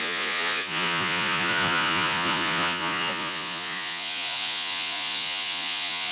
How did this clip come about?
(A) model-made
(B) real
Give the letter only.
A